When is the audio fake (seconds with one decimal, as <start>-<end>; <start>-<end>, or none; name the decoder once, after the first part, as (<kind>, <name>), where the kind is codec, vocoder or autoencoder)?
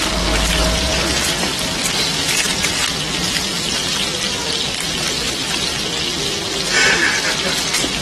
0.6-1.3 (vocoder, BigVGAN v2); 1.8-3.0